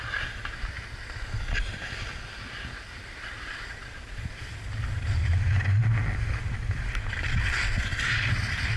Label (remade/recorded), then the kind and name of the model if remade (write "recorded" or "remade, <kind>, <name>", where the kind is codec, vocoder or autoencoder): recorded